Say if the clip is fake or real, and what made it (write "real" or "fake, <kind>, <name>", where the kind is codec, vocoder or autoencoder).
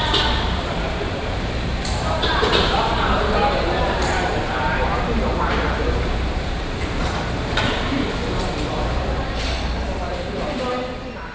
fake, vocoder, BigVGAN v2